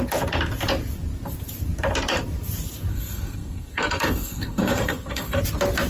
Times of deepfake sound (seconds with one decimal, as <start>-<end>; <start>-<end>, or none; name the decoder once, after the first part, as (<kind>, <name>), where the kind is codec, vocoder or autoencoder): 2.9-5.4 (codec, SNAC)